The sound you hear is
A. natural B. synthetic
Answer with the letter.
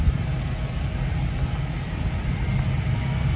A